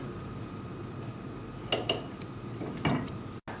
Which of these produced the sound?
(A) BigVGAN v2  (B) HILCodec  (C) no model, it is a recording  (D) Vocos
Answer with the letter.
C